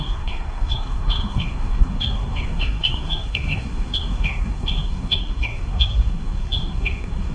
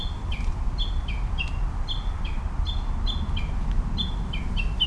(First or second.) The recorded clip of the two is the second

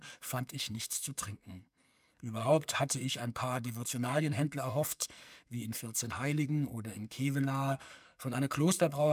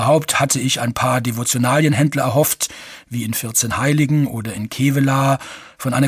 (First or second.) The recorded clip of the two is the second